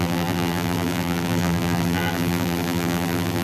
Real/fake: fake